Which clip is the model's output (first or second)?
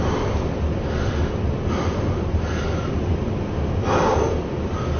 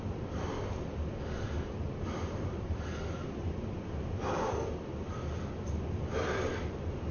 second